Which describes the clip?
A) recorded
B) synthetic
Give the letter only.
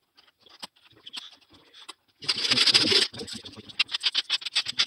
A